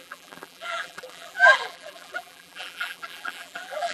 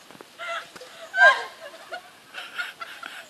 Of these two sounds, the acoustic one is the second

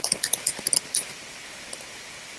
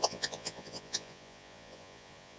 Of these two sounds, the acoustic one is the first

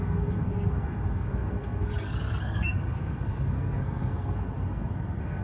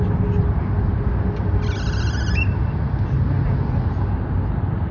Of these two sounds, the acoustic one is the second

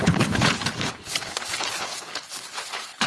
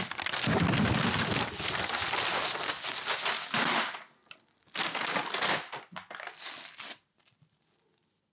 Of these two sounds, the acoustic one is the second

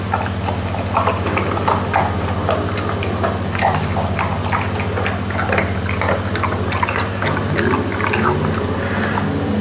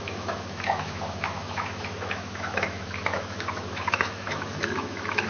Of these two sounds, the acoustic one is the first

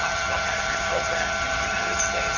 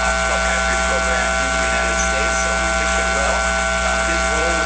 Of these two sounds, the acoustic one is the second